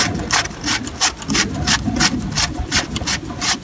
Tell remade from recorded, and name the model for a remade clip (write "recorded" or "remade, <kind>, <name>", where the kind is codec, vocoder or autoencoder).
recorded